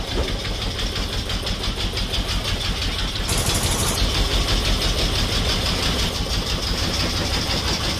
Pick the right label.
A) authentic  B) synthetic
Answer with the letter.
A